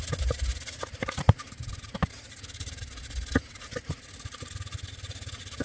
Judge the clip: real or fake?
real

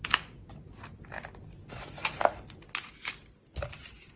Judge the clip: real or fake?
real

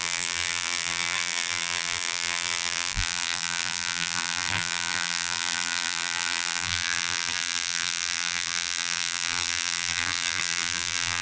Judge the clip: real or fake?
fake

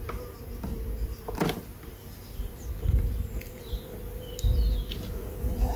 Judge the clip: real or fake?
real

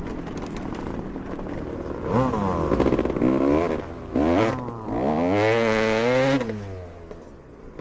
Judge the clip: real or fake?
real